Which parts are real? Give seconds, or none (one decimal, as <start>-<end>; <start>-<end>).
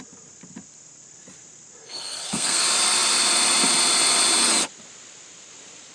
0.0-1.8; 2.6-5.9